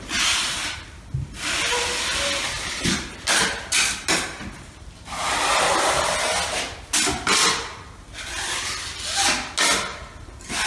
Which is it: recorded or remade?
recorded